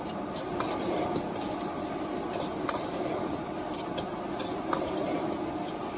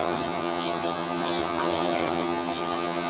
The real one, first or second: first